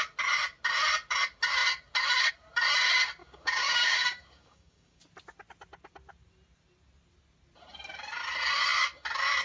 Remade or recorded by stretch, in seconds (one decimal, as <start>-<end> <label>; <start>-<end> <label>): 0.0-3.2 recorded; 3.2-5.0 remade; 5.0-9.4 recorded